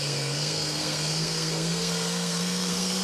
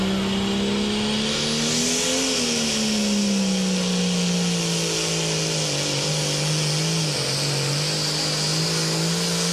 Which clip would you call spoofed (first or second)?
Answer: first